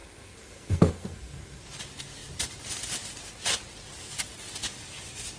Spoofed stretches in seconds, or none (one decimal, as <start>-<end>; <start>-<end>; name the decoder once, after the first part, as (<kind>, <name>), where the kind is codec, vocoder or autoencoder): 0.0-1.6 (codec, SNAC)